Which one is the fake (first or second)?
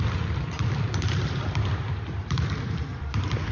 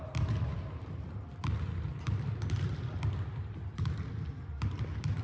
first